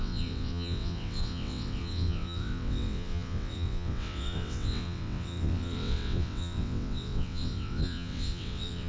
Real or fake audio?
fake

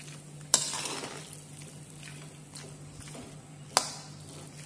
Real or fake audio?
real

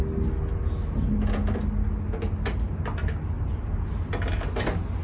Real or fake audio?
real